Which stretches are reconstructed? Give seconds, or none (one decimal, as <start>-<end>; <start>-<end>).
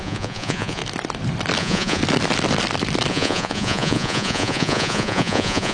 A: 0.0-0.8; 1.6-2.0; 3.1-5.7